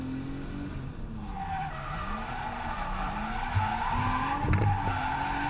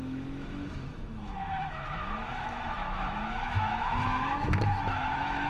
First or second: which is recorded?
first